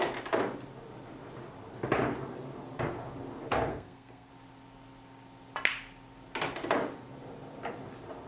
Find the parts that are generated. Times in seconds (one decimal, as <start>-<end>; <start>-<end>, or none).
3.7-4.3